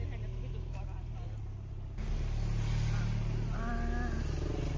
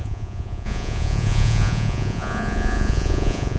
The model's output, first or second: second